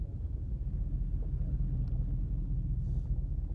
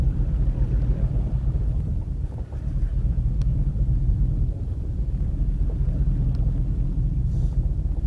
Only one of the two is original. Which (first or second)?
first